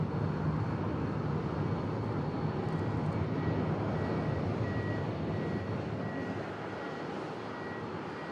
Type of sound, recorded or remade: recorded